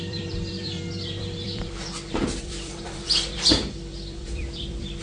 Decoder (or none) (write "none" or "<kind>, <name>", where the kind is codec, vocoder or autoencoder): vocoder, BigVGAN v2